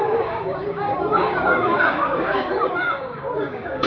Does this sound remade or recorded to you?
remade